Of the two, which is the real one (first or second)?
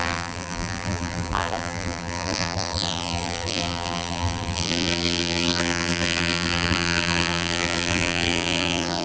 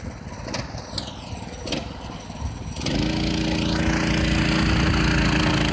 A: second